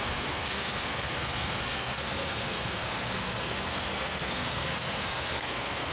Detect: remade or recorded remade